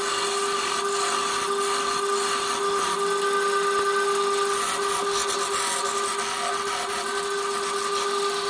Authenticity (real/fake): real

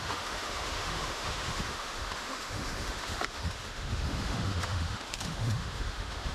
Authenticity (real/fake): fake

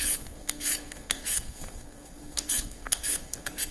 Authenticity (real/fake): fake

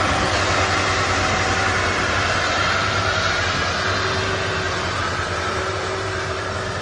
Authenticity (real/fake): real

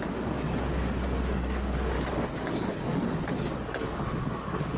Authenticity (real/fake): fake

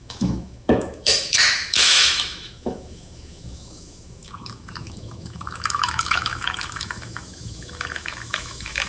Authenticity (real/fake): fake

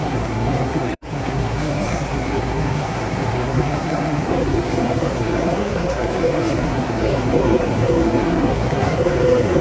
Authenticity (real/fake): fake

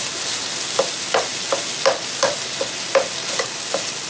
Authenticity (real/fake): real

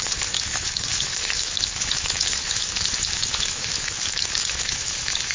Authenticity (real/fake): fake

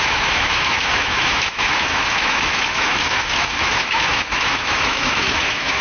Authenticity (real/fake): fake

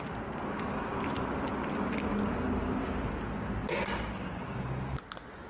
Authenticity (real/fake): real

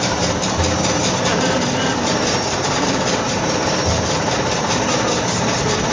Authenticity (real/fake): fake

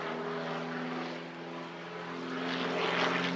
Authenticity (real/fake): real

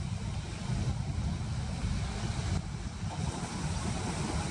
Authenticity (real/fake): real